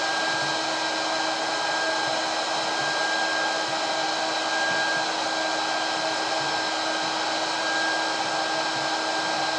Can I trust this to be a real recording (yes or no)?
yes